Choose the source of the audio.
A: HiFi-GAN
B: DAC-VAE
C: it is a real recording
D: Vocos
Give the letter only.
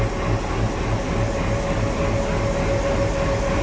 C